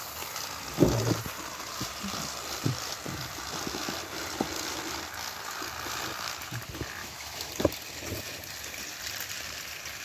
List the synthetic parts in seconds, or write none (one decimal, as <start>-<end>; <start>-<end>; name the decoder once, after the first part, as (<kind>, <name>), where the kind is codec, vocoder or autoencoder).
7.0-7.5 (autoencoder, DAC-VAE)